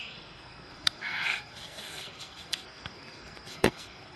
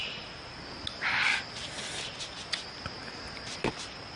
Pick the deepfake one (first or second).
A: first